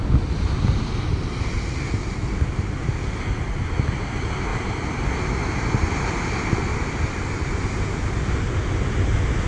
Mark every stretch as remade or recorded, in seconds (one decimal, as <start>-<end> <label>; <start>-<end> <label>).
0.0-4.5 recorded; 4.5-5.4 remade; 5.4-6.7 recorded; 6.7-7.6 remade; 7.6-9.5 recorded